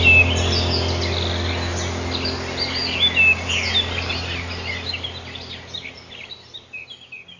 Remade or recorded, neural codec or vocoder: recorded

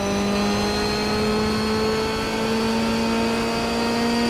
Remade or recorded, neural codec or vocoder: recorded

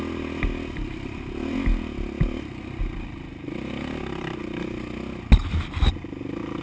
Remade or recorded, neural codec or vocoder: recorded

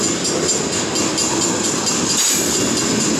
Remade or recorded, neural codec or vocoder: recorded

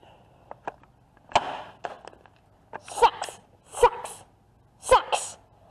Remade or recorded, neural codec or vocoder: recorded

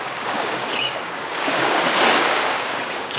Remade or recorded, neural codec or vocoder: remade, codec, DAC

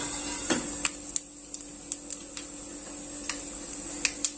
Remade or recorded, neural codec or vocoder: recorded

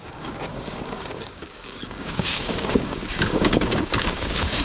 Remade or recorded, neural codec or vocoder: remade, codec, DAC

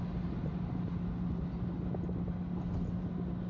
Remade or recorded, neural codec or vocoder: recorded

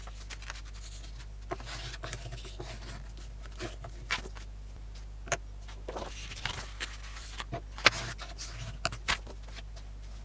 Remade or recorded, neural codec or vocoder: recorded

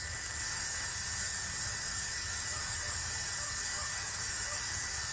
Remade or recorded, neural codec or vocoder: remade, codec, DAC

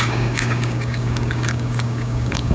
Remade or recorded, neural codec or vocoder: remade, codec, DAC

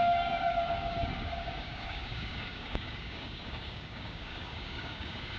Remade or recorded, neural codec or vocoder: remade, codec, DAC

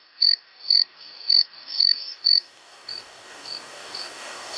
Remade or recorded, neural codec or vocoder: remade, codec, DAC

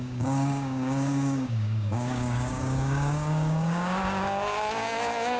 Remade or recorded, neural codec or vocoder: remade, codec, DAC